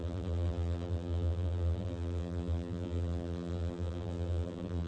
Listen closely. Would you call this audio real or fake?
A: fake